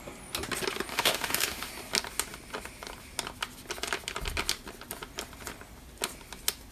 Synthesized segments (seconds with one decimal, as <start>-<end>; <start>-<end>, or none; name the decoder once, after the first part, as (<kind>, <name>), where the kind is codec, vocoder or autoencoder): 0.9-1.7 (autoencoder, DAC-VAE)